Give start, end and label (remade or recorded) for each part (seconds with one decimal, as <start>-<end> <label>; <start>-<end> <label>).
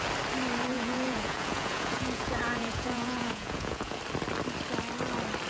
0.0-0.7 recorded; 0.7-4.0 remade; 4.0-5.5 recorded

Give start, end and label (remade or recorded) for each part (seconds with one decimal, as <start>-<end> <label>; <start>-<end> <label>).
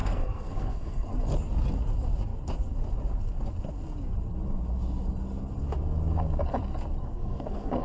0.0-1.1 remade; 1.1-7.0 recorded; 7.0-7.8 remade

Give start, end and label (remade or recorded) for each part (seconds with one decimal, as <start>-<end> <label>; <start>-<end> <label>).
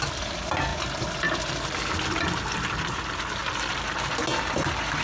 0.0-5.0 recorded